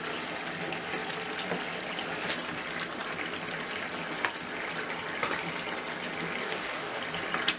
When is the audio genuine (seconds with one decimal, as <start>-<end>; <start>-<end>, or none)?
0.0-6.4; 7.0-7.6